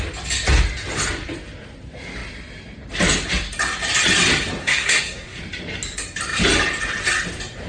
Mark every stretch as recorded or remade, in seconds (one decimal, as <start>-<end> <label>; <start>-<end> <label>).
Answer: 0.0-4.6 recorded; 4.6-5.4 remade; 5.4-7.7 recorded